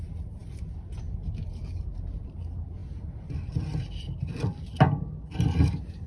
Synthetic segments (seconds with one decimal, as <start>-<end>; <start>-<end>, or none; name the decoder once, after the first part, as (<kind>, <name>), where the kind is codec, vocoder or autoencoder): none